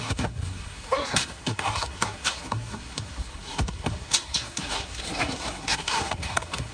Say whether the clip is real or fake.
fake